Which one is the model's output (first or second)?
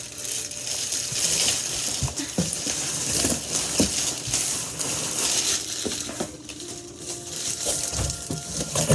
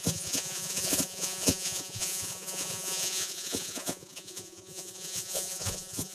second